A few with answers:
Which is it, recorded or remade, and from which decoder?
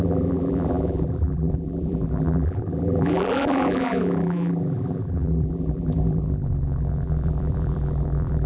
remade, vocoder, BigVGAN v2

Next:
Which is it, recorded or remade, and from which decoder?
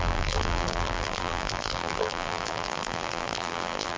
remade, vocoder, BigVGAN v2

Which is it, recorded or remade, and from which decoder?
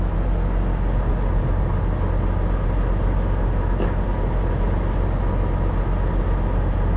recorded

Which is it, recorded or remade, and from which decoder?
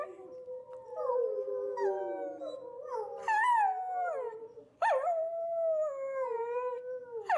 recorded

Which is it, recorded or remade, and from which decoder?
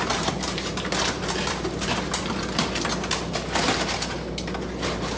recorded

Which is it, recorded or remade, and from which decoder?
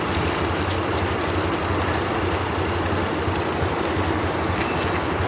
recorded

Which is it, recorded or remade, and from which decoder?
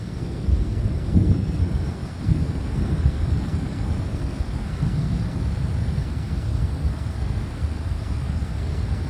remade, codec, SNAC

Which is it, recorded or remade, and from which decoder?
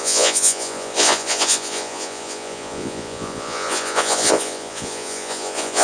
remade, vocoder, Vocos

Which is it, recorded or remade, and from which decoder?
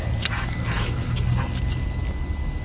recorded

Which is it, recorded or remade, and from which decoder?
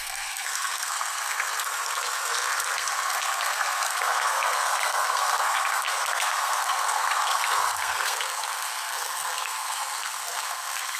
remade, codec, SNAC